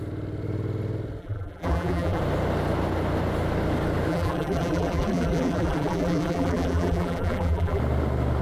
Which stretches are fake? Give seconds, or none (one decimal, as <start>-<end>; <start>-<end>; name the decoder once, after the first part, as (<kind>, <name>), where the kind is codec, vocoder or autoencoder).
1.2-2.2 (vocoder, BigVGAN v2); 4.1-7.8